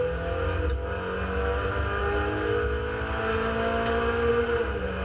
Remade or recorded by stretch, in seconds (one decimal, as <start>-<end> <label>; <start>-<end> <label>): 0.0-5.0 recorded